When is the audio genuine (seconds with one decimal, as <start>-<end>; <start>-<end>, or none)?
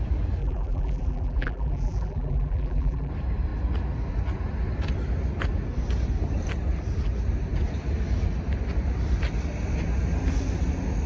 0.0-0.4; 3.1-11.1